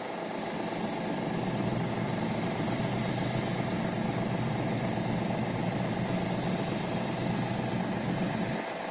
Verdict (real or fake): real